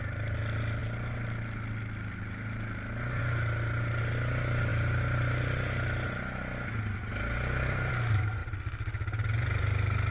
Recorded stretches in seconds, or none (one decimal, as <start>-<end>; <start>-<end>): 0.0-10.1